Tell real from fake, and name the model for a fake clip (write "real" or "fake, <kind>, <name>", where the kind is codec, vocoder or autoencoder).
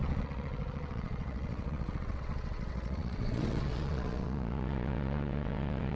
fake, vocoder, WaveNeXt